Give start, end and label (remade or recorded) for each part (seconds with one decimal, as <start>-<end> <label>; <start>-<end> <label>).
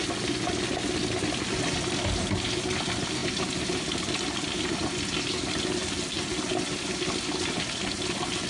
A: 0.0-5.8 recorded; 5.8-6.5 remade; 6.5-8.5 recorded